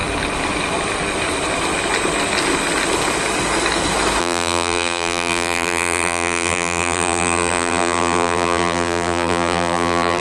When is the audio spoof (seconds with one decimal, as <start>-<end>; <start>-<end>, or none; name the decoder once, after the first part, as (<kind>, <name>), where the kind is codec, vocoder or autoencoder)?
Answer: 4.2-10.2 (vocoder, BigVGAN v2)